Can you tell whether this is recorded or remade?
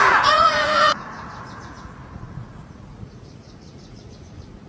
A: remade